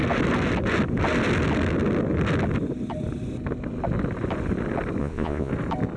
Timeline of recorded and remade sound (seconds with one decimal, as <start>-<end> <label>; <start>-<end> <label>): 0.0-5.0 recorded; 5.0-5.5 remade; 5.5-6.0 recorded